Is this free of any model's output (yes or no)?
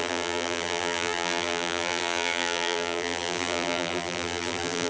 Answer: no